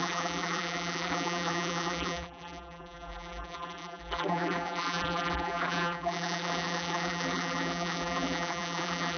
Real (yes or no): no